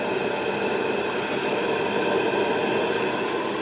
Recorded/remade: recorded